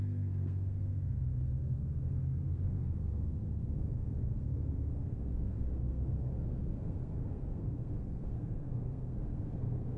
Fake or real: fake